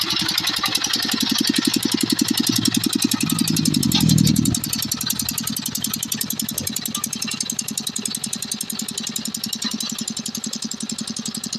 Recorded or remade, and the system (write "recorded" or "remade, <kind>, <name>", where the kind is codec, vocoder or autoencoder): recorded